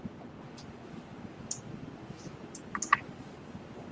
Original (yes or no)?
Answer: yes